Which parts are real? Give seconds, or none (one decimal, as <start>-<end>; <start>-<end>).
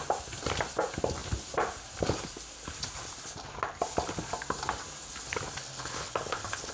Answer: 0.0-5.6